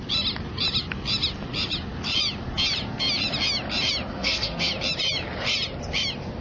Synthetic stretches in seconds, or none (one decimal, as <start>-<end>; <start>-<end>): 4.1-4.7